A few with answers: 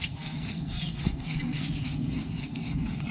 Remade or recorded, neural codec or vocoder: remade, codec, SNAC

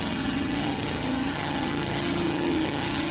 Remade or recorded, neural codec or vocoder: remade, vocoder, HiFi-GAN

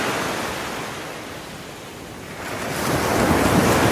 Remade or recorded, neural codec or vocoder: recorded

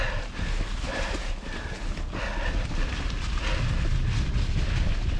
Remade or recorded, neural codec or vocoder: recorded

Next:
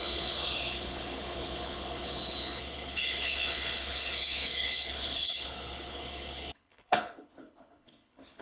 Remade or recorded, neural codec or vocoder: remade, codec, HILCodec